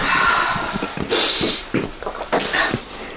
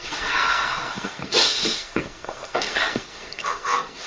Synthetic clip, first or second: second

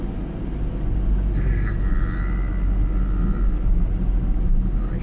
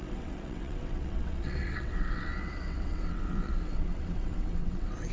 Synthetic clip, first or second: second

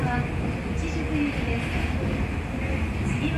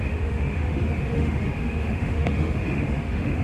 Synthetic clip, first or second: second